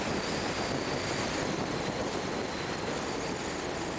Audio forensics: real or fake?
real